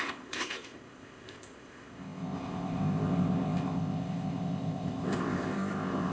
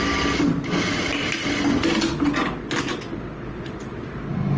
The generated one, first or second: first